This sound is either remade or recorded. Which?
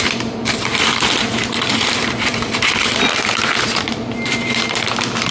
remade